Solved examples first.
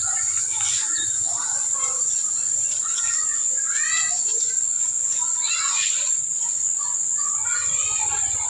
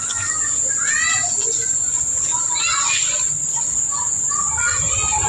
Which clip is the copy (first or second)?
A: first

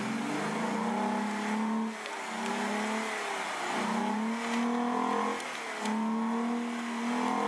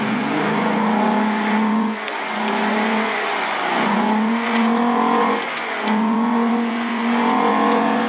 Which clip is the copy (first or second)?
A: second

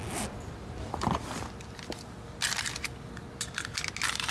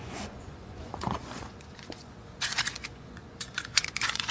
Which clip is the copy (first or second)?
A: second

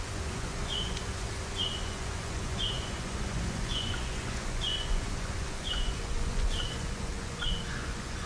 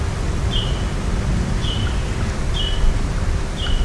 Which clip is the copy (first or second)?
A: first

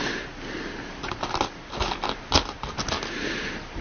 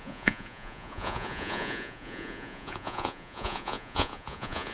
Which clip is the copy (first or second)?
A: second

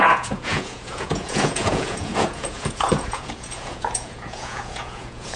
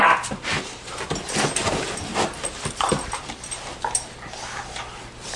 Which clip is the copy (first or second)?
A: first